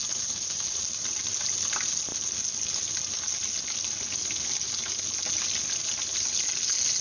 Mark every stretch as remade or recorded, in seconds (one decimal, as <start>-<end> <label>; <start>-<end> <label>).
0.0-1.2 remade; 1.2-7.0 recorded